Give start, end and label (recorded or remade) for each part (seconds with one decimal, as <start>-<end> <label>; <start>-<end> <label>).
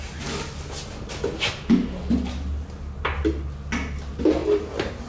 0.0-5.1 recorded